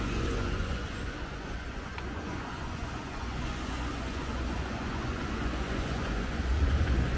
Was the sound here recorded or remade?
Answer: remade